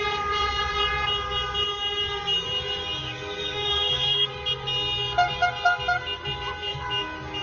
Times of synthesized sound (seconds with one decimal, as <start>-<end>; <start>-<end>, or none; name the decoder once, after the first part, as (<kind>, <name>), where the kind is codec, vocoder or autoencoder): 3.0-4.3 (codec, DAC)